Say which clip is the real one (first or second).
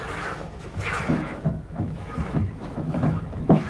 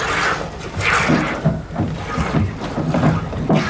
second